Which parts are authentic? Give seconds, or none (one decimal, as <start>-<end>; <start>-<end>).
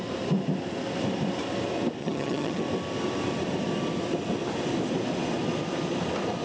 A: 0.0-2.0; 2.6-6.4